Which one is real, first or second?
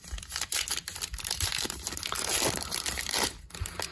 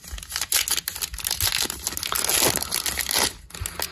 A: second